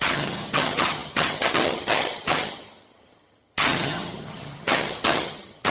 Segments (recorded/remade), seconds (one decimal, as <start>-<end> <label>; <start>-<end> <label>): 0.0-5.7 remade